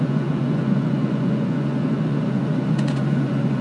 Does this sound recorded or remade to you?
remade